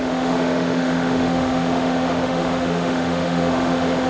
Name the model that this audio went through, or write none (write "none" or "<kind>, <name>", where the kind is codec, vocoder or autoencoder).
autoencoder, DAC-VAE